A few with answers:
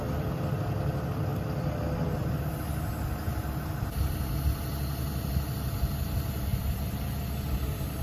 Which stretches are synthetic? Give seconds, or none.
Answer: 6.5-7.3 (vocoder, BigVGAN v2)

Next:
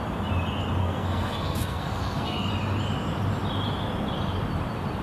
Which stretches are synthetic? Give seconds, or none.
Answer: 0.8-2.5 (codec, SNAC)

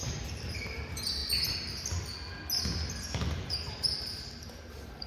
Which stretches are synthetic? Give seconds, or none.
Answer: 0.0-1.2 (vocoder, BigVGAN v2); 3.3-5.1